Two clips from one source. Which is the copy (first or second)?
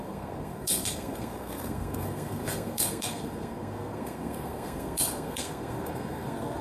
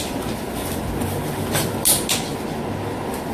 first